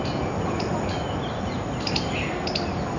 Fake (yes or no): no